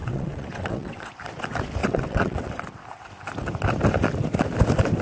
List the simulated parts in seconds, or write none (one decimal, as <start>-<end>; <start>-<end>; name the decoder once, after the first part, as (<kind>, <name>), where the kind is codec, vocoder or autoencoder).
0.0-1.1 (vocoder, WaveNeXt); 1.8-2.5